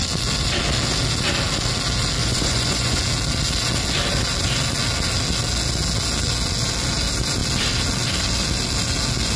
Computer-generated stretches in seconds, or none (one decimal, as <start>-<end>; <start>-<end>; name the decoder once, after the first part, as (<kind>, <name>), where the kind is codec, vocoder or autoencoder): 2.2-3.0 (vocoder, Vocos)